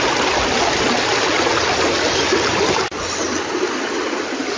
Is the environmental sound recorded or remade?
recorded